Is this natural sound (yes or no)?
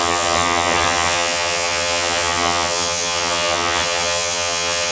no